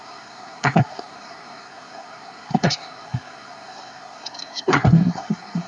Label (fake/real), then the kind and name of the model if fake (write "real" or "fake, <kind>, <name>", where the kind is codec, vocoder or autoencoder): fake, codec, SNAC